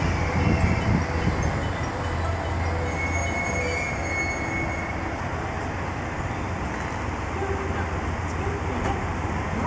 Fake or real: real